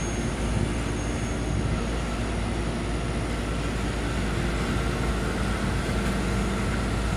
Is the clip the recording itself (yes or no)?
yes